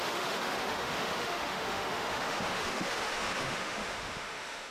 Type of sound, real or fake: fake